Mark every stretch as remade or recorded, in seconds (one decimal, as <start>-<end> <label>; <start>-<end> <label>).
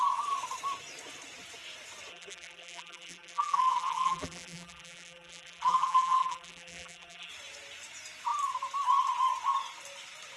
0.0-2.1 recorded; 2.1-7.3 remade; 7.3-10.4 recorded